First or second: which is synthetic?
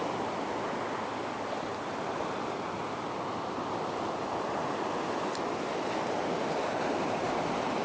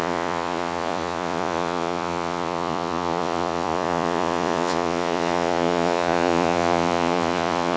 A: second